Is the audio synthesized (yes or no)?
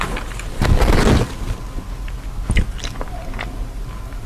no